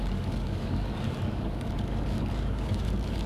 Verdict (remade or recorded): remade